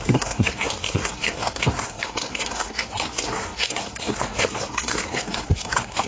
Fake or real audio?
fake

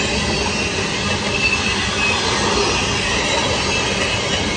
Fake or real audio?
real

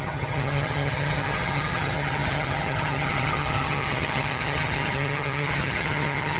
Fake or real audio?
fake